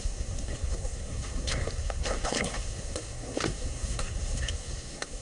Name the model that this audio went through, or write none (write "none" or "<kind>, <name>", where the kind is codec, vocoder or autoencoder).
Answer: codec, SNAC